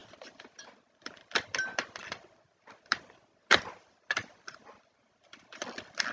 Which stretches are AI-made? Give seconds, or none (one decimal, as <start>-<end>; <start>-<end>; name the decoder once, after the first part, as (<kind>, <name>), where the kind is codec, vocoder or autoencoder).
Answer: none